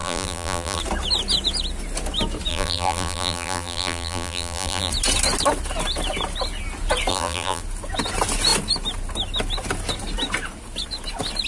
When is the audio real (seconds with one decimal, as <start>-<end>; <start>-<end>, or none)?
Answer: 0.8-2.5; 4.9-7.1; 7.6-11.5